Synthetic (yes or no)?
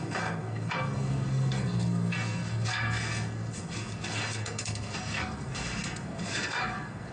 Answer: yes